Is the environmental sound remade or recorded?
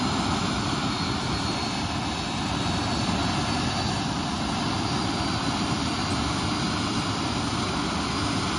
recorded